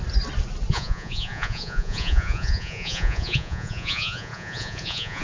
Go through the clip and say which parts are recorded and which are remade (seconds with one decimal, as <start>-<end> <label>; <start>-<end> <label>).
0.0-0.7 recorded; 0.7-5.2 remade